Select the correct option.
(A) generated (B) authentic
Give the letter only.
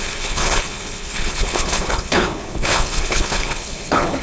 A